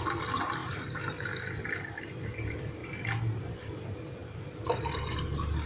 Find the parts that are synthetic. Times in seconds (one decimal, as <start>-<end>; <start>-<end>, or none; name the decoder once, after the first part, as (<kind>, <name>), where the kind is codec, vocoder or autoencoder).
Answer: none